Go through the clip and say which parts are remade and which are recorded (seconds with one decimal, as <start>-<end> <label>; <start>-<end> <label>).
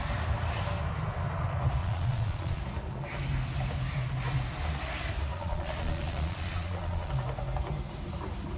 0.0-1.8 recorded; 1.8-2.6 remade; 2.6-5.3 recorded; 5.3-7.1 remade; 7.1-8.6 recorded